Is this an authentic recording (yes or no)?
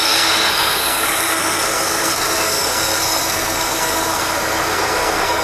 no